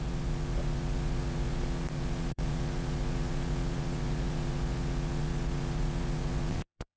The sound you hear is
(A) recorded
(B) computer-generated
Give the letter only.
B